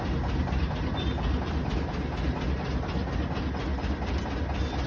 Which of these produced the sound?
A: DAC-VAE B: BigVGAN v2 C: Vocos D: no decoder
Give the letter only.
D